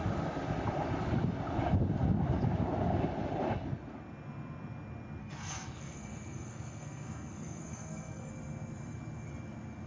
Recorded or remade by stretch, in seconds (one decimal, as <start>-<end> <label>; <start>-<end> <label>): 0.0-5.2 recorded; 5.2-8.3 remade; 8.3-9.9 recorded